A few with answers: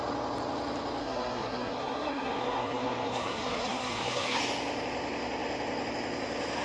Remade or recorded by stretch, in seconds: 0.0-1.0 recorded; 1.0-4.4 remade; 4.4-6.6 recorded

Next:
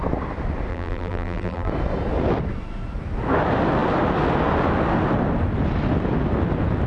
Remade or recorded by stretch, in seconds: 0.0-0.7 recorded; 0.7-1.7 remade; 1.7-6.9 recorded

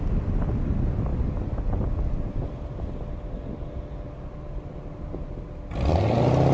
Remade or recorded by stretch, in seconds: 0.0-6.5 recorded

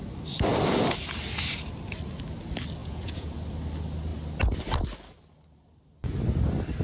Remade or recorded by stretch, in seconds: 0.0-2.8 recorded; 2.8-3.3 remade; 3.3-6.8 recorded

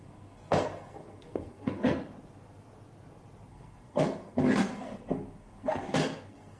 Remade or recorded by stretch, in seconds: 0.0-2.0 remade; 2.0-3.5 recorded; 3.5-6.6 remade

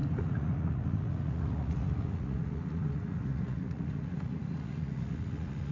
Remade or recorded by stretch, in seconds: 0.0-5.7 remade